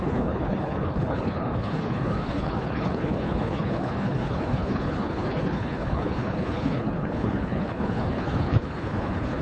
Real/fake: fake